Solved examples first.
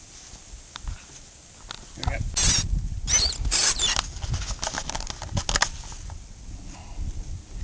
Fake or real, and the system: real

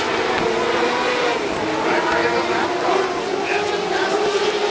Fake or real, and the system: real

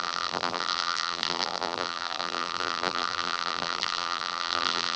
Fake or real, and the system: fake, vocoder, BigVGAN v2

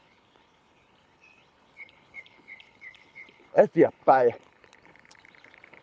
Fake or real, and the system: fake, codec, HILCodec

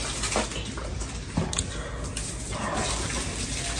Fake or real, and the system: real